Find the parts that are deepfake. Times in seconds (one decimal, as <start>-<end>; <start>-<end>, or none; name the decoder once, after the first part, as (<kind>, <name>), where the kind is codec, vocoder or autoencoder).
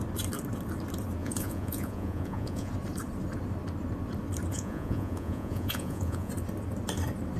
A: 1.2-2.7 (vocoder, Vocos); 4.5-6.3